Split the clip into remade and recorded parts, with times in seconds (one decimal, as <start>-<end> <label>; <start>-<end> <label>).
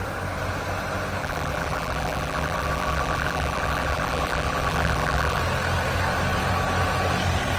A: 0.0-1.2 recorded; 1.2-5.4 remade; 5.4-7.6 recorded